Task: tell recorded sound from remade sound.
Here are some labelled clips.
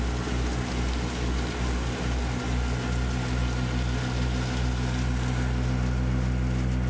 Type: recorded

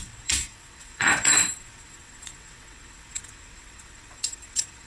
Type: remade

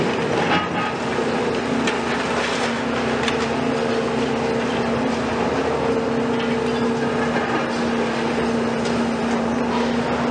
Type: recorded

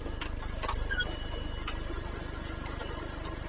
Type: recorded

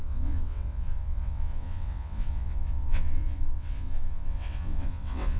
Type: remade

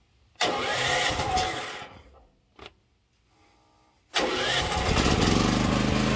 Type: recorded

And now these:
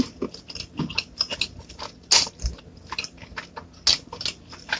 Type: recorded